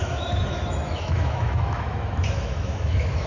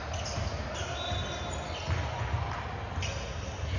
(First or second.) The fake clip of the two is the first